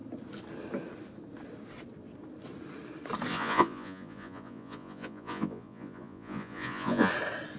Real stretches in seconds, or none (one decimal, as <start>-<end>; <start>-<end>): 0.0-3.3; 7.1-7.6